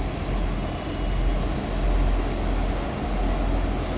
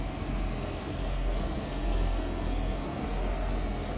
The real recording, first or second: first